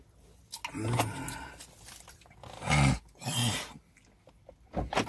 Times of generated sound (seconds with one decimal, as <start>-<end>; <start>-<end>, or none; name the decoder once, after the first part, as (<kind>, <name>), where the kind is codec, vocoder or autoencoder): none